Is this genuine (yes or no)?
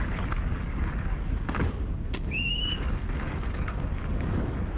no